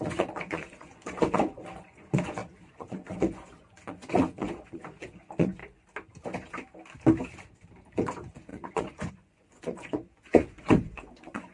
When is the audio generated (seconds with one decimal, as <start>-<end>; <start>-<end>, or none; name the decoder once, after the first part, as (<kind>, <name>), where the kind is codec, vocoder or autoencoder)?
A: 0.0-5.6 (vocoder, Vocos); 7.9-11.5